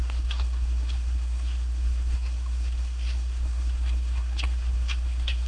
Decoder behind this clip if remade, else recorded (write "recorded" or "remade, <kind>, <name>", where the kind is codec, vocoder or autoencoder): remade, codec, SNAC